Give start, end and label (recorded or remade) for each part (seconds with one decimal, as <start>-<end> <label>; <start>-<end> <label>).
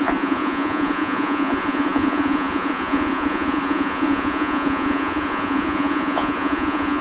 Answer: 0.0-7.0 remade